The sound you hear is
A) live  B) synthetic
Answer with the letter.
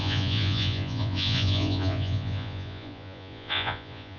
B